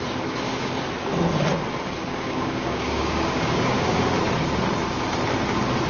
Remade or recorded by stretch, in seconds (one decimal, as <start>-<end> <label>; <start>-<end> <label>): 0.0-2.1 recorded; 2.1-4.1 remade; 4.1-5.9 recorded